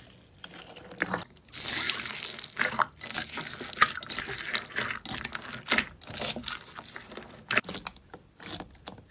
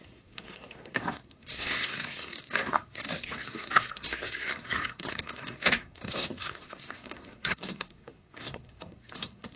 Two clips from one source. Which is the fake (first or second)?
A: second